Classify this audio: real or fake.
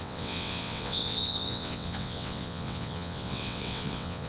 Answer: fake